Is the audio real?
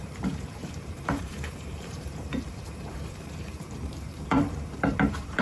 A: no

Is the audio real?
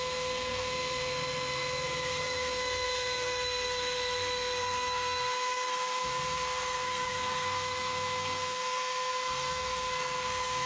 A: no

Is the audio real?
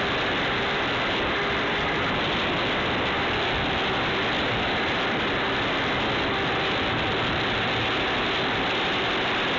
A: yes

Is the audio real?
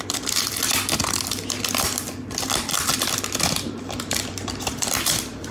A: no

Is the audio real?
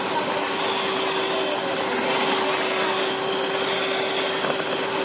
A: yes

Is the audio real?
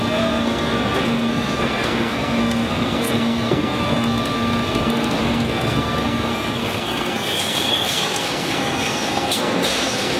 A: no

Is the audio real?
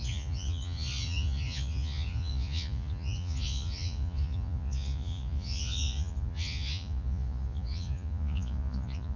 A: no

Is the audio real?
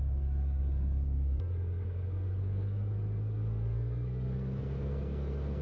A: no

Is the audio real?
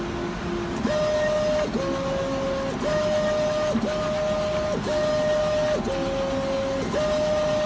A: yes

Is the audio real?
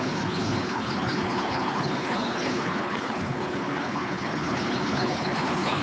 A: no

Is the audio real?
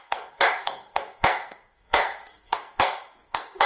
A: no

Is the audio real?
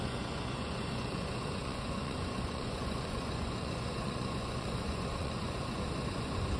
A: no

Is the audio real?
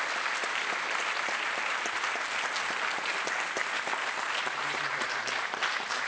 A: yes